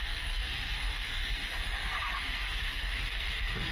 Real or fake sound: fake